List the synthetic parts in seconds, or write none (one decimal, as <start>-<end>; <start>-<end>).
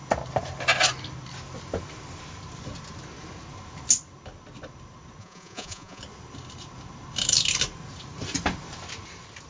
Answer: 5.2-6.0